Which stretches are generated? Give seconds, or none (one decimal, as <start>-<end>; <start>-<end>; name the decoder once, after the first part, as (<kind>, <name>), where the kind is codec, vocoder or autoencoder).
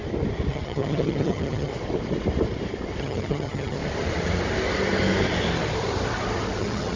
0.5-1.7 (vocoder, HiFi-GAN); 3.0-3.8; 6.6-7.0